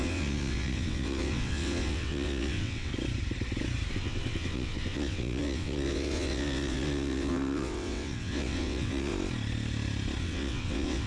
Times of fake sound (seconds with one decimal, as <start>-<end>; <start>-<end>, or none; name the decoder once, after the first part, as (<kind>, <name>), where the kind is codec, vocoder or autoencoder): 0.0-2.9 (vocoder, WaveNeXt); 3.9-9.1; 10.2-11.1